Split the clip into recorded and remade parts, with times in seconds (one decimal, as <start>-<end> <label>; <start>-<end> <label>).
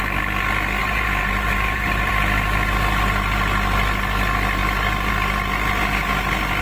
0.0-0.8 recorded; 0.8-2.1 remade; 2.1-6.6 recorded